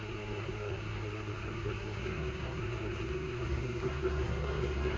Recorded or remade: remade